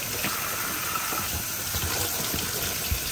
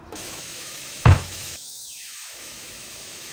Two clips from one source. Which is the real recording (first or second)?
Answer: first